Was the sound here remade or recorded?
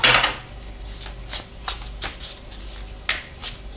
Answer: recorded